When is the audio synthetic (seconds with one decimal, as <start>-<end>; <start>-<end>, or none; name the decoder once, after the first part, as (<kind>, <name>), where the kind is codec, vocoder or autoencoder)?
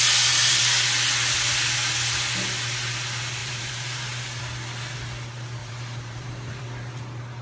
3.4-4.4 (vocoder, BigVGAN v2); 5.6-6.6